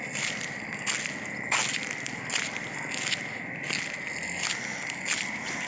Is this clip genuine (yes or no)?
yes